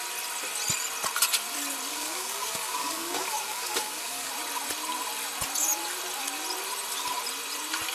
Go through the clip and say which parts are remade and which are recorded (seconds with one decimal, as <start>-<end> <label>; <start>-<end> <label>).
0.0-1.9 recorded; 1.9-4.3 remade; 4.3-7.9 recorded